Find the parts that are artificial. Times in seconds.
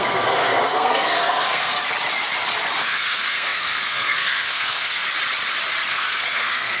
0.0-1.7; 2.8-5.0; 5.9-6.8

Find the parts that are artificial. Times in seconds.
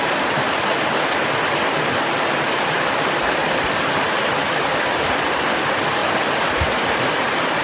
none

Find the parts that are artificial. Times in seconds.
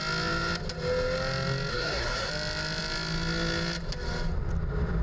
1.7-2.3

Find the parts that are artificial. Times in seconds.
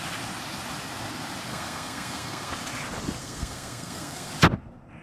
1.5-2.5; 3.2-4.3